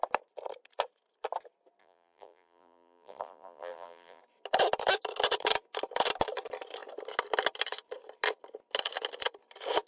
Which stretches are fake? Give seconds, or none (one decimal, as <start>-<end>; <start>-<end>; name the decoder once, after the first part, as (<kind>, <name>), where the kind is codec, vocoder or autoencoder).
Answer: 1.8-4.2 (vocoder, BigVGAN v2)